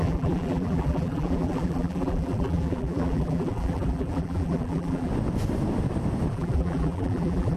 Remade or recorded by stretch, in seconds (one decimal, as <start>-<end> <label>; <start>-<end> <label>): 0.0-5.1 remade; 5.1-6.3 recorded; 6.3-7.6 remade